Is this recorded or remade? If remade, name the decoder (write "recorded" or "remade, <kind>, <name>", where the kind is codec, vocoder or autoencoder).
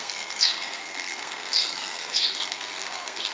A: remade, codec, SNAC